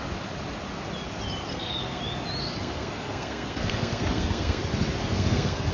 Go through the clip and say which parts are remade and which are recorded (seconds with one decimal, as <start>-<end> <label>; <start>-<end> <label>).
0.0-1.5 recorded; 1.5-2.0 remade; 2.0-2.4 recorded; 2.4-4.6 remade; 4.6-5.0 recorded; 5.0-5.7 remade